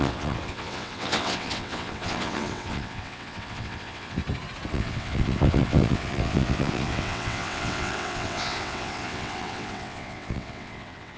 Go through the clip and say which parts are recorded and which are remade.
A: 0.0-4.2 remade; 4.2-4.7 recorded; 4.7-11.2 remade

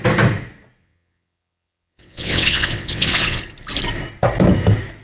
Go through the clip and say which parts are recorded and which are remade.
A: 0.0-0.8 recorded; 0.8-3.4 remade; 3.4-5.0 recorded